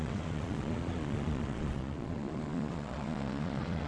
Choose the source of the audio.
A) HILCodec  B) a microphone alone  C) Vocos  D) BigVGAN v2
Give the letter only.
C